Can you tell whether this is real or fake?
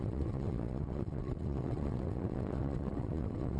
fake